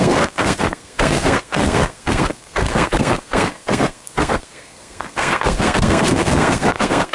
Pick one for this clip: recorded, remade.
remade